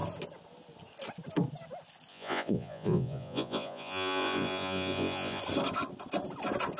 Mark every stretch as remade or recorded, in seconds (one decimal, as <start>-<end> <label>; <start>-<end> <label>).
0.0-2.1 recorded; 2.1-5.4 remade; 5.4-6.8 recorded